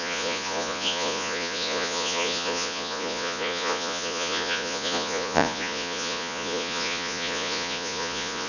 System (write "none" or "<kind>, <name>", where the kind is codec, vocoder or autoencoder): vocoder, Vocos